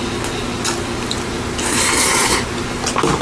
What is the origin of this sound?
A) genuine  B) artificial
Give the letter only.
A